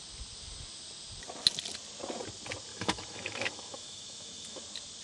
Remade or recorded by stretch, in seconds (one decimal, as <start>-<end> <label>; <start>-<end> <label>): 0.0-2.7 recorded; 2.7-4.6 remade; 4.6-5.0 recorded